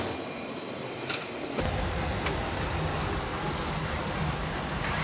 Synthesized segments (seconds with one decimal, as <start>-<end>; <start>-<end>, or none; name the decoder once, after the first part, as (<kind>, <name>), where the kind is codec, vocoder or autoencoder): 2.9-3.9 (codec, DAC)

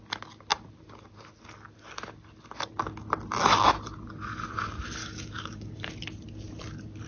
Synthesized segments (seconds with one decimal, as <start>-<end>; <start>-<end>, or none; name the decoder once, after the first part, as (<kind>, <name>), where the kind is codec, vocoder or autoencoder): 5.0-5.9 (codec, DAC)

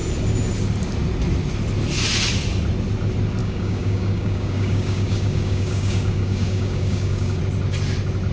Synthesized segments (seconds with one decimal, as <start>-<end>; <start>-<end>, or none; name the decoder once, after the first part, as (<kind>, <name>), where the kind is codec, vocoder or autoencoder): 3.4-7.4 (codec, DAC)